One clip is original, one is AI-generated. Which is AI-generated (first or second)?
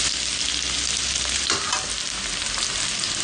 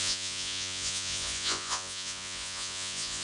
second